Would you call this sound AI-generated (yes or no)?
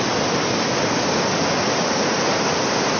no